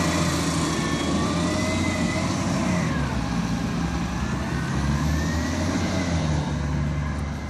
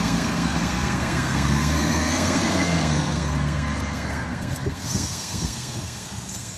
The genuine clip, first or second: first